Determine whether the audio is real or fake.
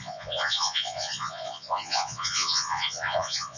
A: fake